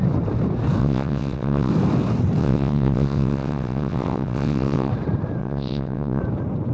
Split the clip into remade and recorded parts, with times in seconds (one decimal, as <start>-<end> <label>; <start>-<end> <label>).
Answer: 0.0-0.8 recorded; 0.8-1.7 remade; 1.7-2.4 recorded; 2.4-4.9 remade; 4.9-5.4 recorded; 5.4-6.2 remade; 6.2-6.7 recorded